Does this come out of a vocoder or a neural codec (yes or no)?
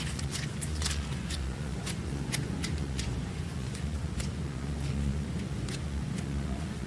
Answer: yes